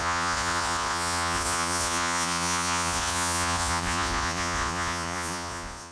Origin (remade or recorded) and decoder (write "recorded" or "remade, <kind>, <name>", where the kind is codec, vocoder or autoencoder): remade, vocoder, Vocos